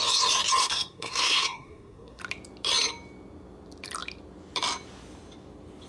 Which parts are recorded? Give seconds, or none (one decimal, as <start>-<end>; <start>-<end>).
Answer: 0.0-0.6; 2.2-5.9